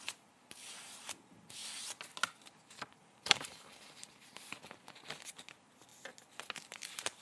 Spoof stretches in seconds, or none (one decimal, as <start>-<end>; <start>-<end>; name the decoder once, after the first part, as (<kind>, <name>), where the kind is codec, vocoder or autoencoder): 3.0-4.0 (vocoder, BigVGAN v2)